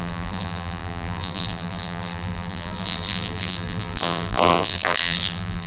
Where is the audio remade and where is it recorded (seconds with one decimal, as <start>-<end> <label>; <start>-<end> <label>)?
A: 0.0-5.7 remade